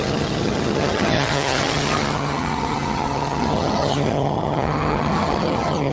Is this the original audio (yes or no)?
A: no